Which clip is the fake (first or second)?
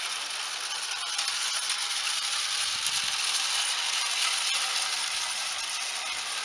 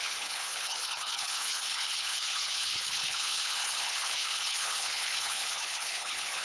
second